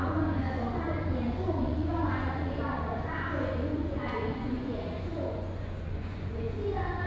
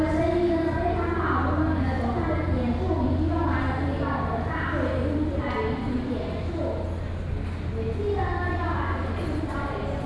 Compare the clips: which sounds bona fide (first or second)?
second